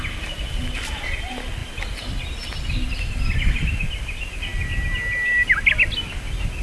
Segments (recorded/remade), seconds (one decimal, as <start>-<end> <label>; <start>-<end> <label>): 0.0-1.6 recorded; 1.6-3.3 remade; 3.3-6.6 recorded